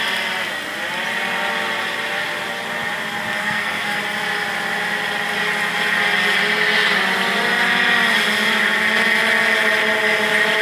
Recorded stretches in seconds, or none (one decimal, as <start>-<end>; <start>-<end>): 0.0-3.4; 4.0-10.6